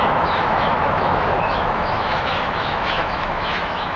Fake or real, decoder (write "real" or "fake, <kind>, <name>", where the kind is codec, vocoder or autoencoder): fake, autoencoder, DAC-VAE